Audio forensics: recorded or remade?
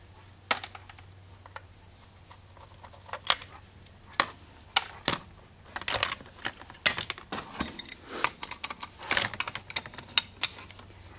recorded